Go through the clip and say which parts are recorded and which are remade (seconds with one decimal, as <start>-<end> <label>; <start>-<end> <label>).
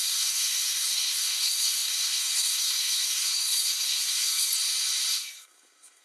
0.0-4.5 remade; 4.5-5.1 recorded; 5.1-6.0 remade